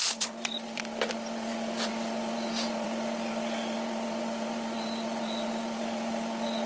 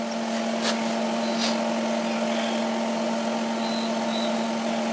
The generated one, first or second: first